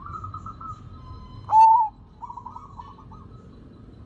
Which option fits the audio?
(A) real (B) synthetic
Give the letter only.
A